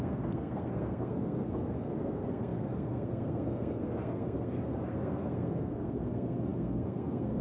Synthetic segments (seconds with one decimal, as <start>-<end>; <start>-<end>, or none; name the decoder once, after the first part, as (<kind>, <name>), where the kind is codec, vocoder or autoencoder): 0.0-7.4 (codec, SNAC)